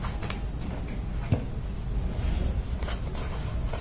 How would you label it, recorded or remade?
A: recorded